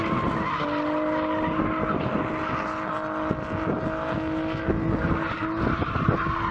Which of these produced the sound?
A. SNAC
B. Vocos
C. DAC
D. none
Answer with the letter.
D